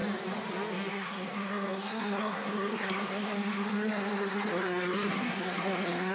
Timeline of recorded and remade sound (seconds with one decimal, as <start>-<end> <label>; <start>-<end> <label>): 0.0-0.9 recorded; 0.9-6.1 remade